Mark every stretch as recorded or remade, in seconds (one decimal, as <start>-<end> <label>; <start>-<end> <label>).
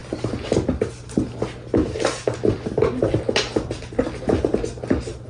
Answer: 0.0-5.3 recorded